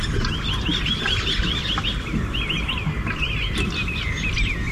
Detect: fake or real real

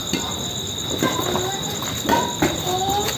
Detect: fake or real real